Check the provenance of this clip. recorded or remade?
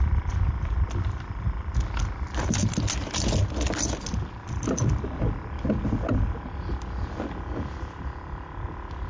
recorded